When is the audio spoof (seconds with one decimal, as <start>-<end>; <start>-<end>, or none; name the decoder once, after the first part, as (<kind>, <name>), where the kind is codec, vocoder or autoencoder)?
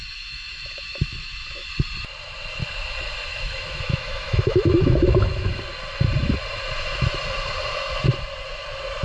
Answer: 0.0-1.7 (autoencoder, DAC-VAE); 3.2-5.6